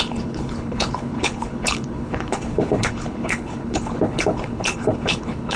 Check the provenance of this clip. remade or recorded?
remade